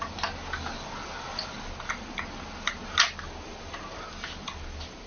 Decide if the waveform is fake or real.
real